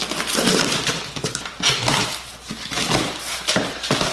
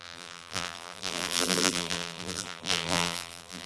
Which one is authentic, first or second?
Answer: first